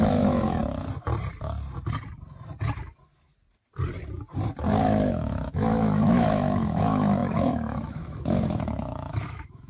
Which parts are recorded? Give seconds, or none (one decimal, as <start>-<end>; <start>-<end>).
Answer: 0.6-4.8